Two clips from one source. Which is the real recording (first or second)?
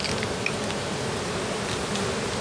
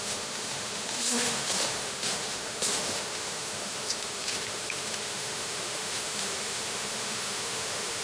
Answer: first